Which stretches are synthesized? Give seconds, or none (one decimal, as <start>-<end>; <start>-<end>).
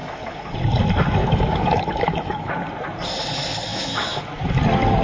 1.2-2.5; 3.7-4.2